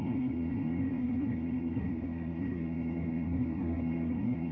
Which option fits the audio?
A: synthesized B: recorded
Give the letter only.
A